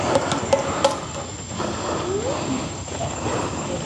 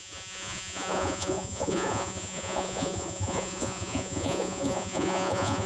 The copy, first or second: second